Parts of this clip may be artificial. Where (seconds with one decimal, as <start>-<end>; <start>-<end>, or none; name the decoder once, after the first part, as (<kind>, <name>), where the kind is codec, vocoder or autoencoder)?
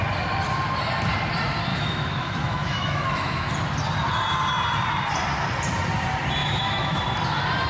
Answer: 1.7-3.5 (autoencoder, DAC-VAE); 6.4-7.0